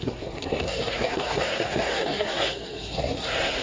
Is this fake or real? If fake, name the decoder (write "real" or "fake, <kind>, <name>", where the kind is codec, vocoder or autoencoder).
fake, codec, SNAC